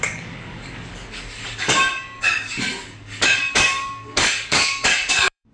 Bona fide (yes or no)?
no